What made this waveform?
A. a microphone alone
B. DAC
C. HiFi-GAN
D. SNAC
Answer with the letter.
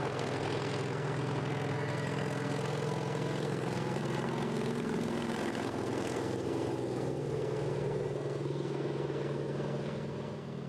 D